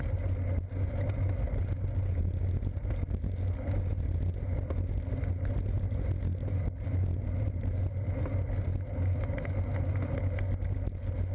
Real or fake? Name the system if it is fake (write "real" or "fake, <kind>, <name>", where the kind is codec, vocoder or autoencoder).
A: real